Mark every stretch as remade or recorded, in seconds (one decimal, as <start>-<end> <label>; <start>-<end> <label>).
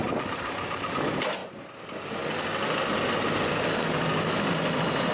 0.0-0.9 remade; 0.9-5.1 recorded